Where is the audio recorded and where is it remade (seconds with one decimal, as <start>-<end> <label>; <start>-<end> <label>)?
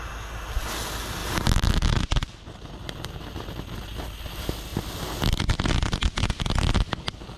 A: 0.0-1.2 recorded; 1.2-3.8 remade; 3.8-7.4 recorded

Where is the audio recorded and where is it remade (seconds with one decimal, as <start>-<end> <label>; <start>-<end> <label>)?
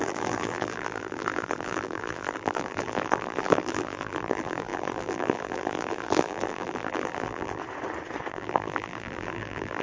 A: 0.0-7.6 remade; 7.6-8.3 recorded; 8.3-9.8 remade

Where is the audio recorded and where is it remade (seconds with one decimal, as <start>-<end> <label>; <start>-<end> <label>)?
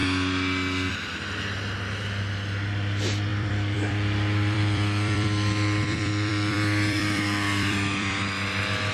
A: 0.0-3.3 recorded; 3.3-8.2 remade; 8.2-8.9 recorded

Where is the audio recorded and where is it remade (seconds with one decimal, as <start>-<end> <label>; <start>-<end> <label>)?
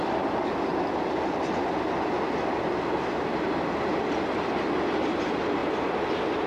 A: 0.0-6.5 recorded